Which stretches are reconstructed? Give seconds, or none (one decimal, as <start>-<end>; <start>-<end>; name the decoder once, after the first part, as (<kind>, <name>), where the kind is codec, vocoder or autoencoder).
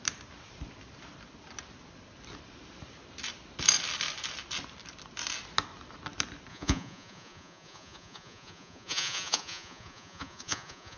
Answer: 6.5-11.0 (vocoder, Vocos)